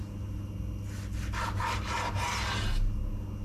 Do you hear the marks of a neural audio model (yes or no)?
no